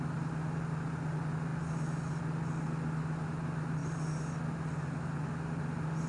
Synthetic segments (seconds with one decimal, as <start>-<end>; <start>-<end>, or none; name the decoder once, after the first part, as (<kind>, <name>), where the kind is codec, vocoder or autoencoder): none